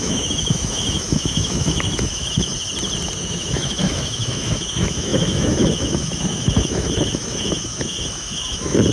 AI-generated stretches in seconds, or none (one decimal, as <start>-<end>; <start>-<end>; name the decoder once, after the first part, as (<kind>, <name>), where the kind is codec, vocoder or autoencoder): 0.0-2.5 (autoencoder, DAC-VAE); 3.2-8.9